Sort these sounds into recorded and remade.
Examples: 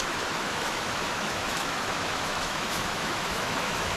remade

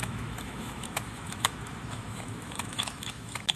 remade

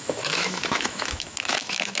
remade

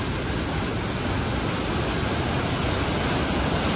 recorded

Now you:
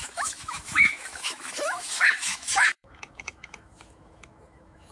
remade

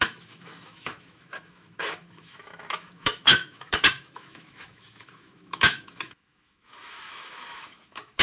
remade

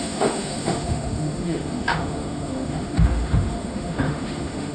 remade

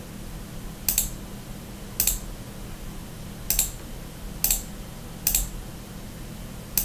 recorded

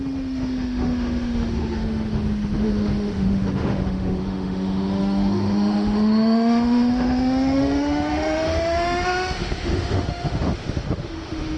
remade